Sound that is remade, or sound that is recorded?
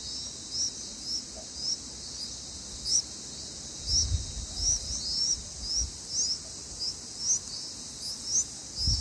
recorded